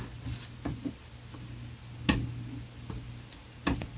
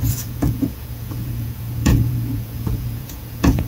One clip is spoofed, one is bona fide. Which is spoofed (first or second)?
second